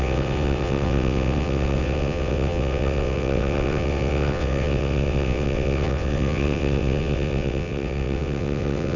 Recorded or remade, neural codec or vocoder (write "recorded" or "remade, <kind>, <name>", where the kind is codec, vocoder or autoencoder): remade, vocoder, WaveNeXt